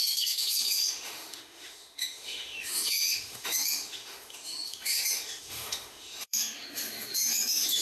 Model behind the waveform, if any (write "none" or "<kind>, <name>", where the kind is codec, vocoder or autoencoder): autoencoder, DAC-VAE